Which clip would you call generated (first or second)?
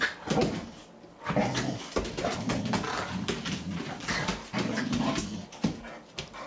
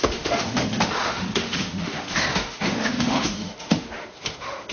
second